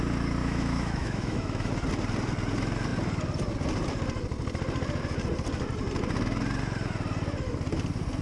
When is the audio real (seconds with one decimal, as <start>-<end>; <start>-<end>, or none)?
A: 0.0-0.4; 1.7-8.2